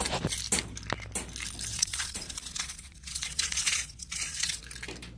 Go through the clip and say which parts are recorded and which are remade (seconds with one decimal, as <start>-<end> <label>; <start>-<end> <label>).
0.0-1.7 recorded; 1.7-4.6 remade; 4.6-5.2 recorded